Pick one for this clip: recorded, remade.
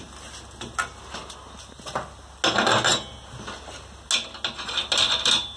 recorded